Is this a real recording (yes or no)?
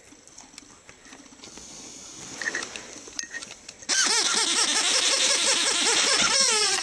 no